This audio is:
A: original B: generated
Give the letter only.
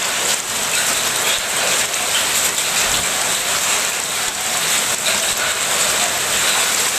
A